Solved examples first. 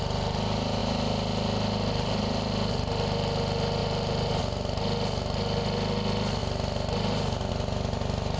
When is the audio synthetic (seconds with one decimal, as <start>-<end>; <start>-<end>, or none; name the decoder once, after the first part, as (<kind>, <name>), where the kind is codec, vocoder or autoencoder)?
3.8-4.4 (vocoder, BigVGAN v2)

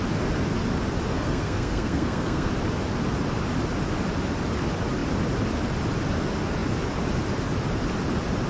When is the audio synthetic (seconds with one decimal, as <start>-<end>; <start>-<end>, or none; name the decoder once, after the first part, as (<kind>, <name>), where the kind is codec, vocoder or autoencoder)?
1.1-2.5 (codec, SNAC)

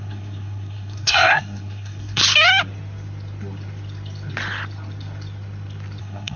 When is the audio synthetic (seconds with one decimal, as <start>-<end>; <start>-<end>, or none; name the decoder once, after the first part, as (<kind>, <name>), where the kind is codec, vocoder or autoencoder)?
0.0-2.2 (codec, SNAC); 6.0-6.4